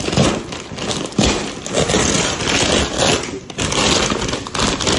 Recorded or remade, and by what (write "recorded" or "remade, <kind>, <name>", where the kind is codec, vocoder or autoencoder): recorded